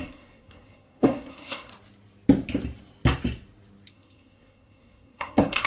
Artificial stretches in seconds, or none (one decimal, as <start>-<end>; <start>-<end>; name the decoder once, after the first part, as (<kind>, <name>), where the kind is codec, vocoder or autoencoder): 0.0-1.7 (codec, SNAC); 3.9-5.7